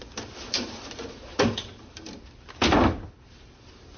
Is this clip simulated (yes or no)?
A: no